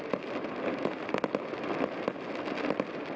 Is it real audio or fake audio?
real